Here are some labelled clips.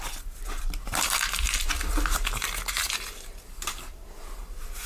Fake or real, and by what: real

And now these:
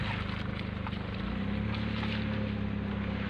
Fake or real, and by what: real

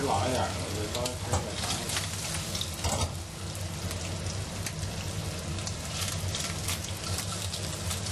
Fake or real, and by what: real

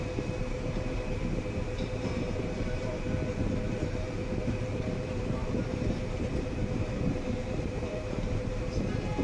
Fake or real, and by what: fake, vocoder, BigVGAN v2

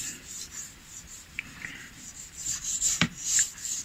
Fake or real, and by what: fake, vocoder, BigVGAN v2